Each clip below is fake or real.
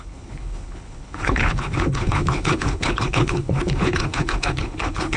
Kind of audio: fake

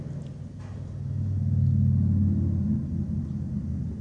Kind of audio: real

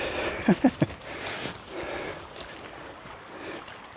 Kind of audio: real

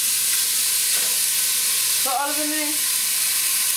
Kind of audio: real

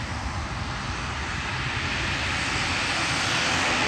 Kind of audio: real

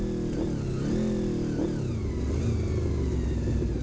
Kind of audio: real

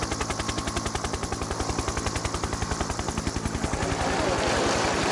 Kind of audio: real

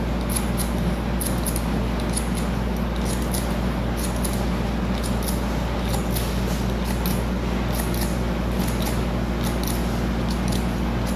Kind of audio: real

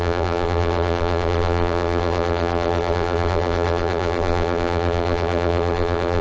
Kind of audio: fake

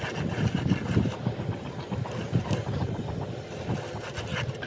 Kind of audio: real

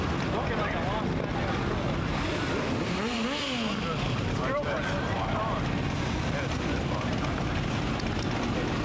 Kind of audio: real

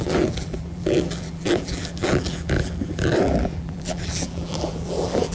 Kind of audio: fake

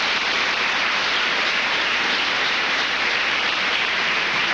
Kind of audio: fake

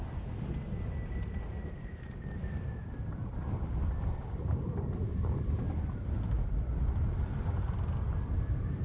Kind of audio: real